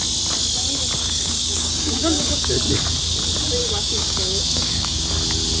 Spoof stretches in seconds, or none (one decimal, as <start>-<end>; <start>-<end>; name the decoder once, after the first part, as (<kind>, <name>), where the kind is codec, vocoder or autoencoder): 1.0-2.5 (codec, DAC); 3.6-5.0